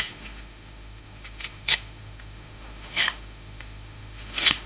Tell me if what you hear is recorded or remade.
remade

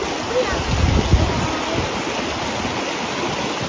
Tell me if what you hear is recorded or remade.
recorded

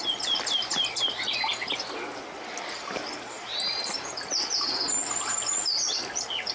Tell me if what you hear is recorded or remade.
recorded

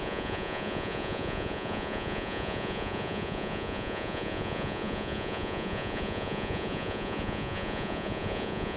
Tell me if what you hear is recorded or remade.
remade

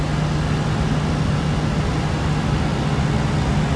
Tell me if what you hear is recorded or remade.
recorded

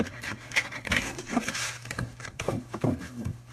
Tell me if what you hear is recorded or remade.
remade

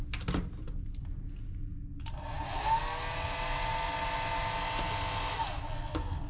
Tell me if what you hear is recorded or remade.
recorded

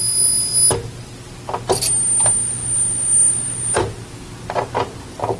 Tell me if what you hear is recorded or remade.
recorded